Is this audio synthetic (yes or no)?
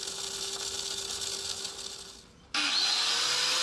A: no